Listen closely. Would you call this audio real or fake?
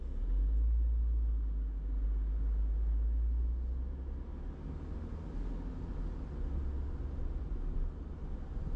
real